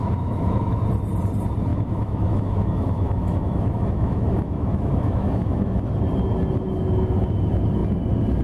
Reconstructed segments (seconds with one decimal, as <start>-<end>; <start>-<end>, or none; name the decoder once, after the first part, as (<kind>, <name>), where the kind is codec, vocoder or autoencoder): 0.0-0.8 (autoencoder, DAC-VAE); 1.7-5.8